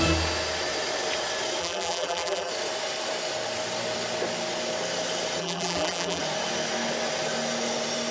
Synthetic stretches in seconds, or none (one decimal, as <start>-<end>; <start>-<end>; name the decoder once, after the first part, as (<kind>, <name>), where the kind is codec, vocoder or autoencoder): 1.6-2.5 (vocoder, BigVGAN v2); 5.4-6.2